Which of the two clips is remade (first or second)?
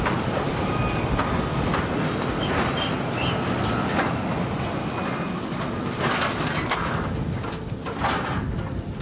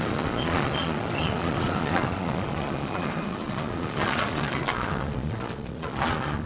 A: second